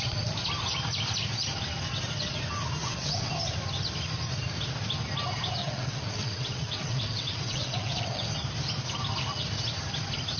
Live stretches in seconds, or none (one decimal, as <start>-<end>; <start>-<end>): 0.0-2.8; 3.3-5.6; 8.3-10.4